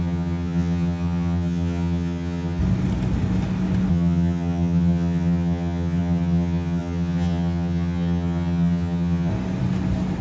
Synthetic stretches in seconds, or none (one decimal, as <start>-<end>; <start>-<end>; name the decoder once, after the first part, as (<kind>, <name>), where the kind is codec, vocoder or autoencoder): 0.0-2.6 (vocoder, HiFi-GAN); 3.9-9.3